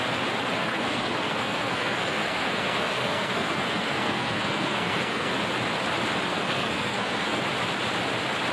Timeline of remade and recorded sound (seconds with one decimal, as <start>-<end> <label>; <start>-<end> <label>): 0.0-0.6 recorded; 0.6-5.3 remade; 5.3-6.3 recorded; 6.3-7.4 remade; 7.4-8.5 recorded

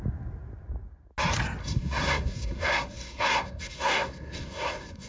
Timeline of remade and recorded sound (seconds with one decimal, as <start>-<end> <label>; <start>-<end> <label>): 0.0-1.6 recorded; 1.6-5.1 remade

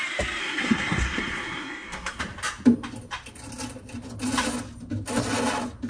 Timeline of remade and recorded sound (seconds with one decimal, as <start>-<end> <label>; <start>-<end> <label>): 0.0-0.4 recorded; 0.4-2.2 remade; 2.2-5.9 recorded